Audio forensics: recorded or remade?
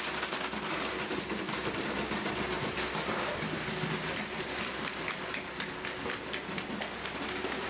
recorded